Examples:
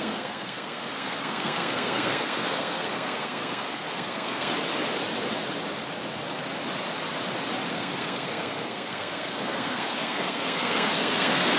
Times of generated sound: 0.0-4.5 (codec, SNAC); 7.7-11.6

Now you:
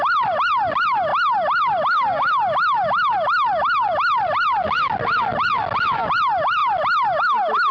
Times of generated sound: none

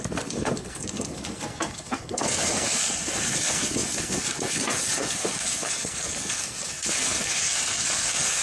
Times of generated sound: 0.0-8.4 (codec, SNAC)

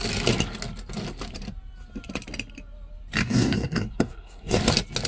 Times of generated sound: 3.2-4.6 (codec, SNAC)

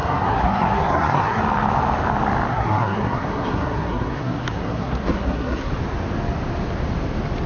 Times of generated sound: 0.0-1.4 (codec, SNAC); 2.5-5.7

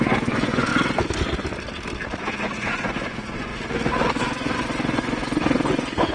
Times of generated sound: 0.0-0.7 (vocoder, Vocos); 2.2-3.5; 4.2-6.1